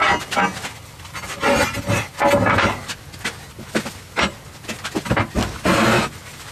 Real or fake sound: real